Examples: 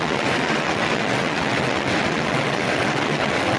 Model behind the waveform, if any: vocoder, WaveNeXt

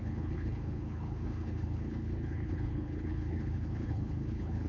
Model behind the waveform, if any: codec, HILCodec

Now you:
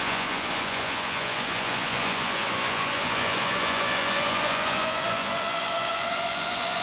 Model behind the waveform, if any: vocoder, Vocos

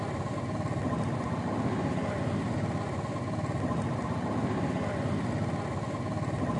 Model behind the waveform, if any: none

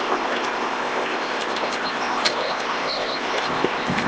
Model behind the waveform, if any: codec, ZipCodec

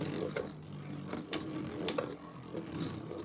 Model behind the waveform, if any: none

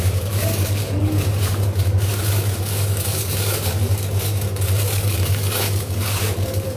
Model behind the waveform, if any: codec, DAC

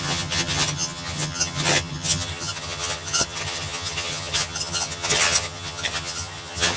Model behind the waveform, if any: vocoder, HiFi-GAN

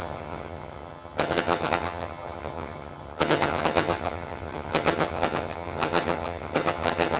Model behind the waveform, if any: vocoder, HiFi-GAN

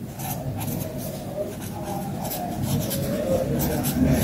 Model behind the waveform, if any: none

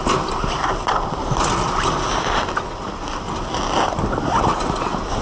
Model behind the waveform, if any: none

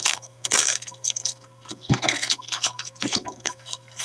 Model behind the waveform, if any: codec, SNAC